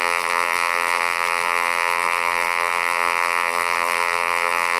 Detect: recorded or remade remade